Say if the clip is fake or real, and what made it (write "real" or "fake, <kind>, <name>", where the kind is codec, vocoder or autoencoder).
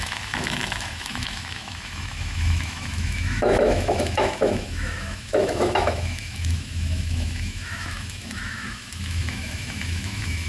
fake, autoencoder, DAC-VAE